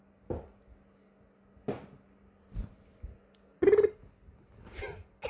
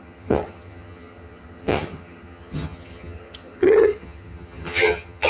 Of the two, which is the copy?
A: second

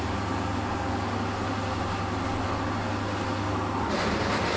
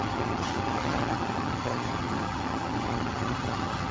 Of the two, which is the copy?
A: second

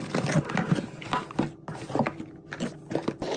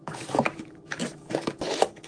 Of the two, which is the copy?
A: second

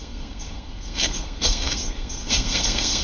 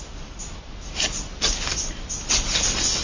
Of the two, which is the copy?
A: first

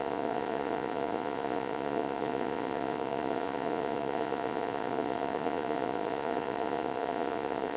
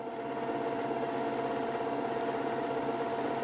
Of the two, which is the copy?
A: first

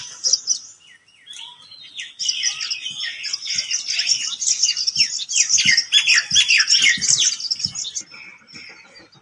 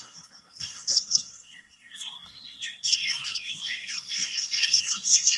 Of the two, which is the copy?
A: second